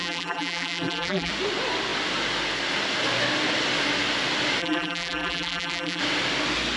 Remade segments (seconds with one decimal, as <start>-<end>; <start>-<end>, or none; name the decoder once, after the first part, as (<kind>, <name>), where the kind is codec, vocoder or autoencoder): 0.0-1.3 (vocoder, BigVGAN v2); 4.6-6.0